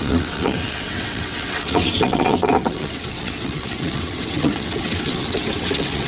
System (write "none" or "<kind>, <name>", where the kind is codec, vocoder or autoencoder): vocoder, WaveNeXt